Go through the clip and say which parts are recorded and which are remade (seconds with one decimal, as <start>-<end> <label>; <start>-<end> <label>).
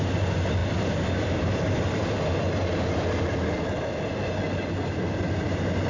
0.0-5.9 recorded